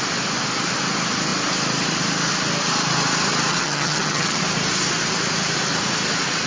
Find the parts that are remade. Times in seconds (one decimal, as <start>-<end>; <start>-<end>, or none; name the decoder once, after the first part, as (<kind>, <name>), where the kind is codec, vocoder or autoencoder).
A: 3.5-4.4 (vocoder, HiFi-GAN)

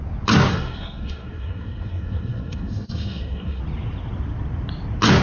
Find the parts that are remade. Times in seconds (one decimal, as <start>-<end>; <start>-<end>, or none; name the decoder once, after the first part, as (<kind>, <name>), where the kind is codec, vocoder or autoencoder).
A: 0.5-3.6 (codec, SNAC)

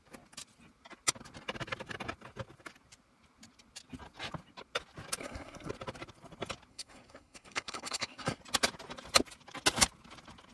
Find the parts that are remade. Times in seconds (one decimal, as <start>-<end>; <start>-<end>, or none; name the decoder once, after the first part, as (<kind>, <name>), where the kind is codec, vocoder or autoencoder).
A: 5.2-5.7 (codec, SNAC); 6.7-8.4